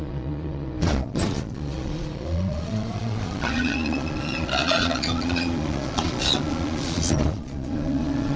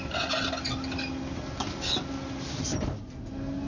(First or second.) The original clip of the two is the second